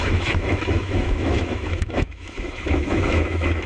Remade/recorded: remade